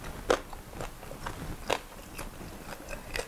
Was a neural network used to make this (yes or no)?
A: no